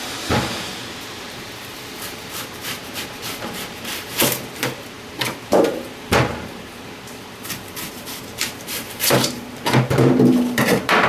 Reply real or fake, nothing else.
fake